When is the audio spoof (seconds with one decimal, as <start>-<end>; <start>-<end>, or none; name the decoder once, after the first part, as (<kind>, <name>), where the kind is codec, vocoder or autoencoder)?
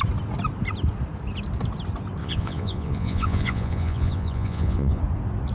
2.2-5.0 (vocoder, Vocos)